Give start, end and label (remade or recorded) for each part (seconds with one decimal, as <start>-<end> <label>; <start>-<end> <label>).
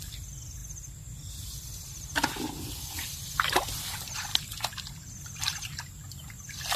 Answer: 0.0-0.6 remade; 0.6-1.3 recorded; 1.3-4.3 remade; 4.3-6.3 recorded; 6.3-6.8 remade